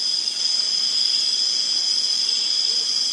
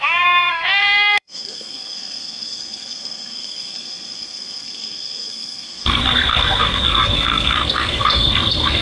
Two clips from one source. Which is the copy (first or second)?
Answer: second